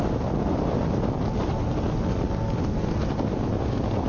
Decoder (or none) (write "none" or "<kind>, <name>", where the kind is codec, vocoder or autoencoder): none